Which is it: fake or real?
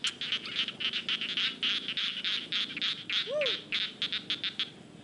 real